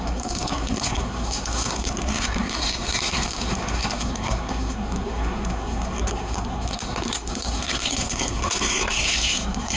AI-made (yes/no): yes